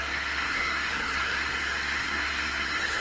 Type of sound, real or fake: fake